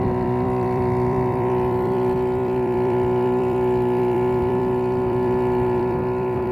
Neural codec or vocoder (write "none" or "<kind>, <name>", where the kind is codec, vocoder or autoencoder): vocoder, BigVGAN v2